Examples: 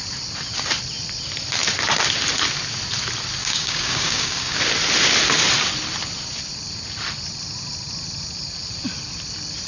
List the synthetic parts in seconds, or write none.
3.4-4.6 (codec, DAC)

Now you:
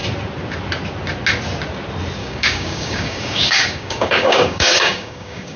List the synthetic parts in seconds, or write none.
2.2-5.6 (codec, DAC)

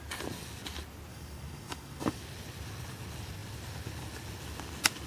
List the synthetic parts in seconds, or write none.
1.1-2.2 (codec, DAC)

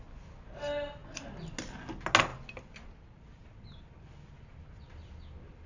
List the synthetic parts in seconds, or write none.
none

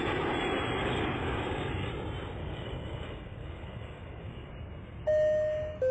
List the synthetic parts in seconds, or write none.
0.8-1.9 (codec, DAC); 2.4-4.5